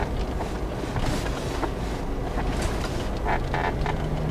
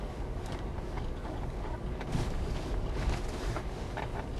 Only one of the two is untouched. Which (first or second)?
first